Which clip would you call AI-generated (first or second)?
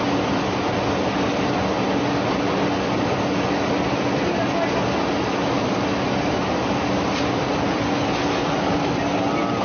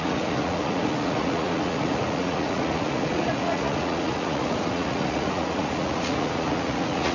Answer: second